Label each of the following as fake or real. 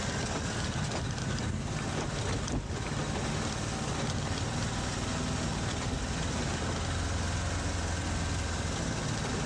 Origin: real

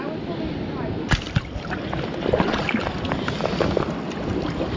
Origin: real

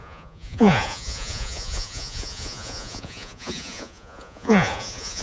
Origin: fake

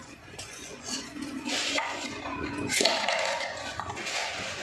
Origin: fake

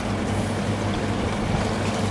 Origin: real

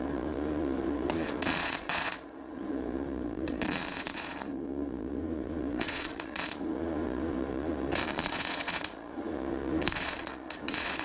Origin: fake